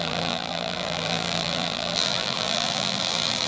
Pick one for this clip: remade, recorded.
remade